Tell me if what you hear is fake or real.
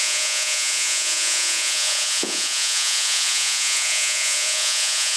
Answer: fake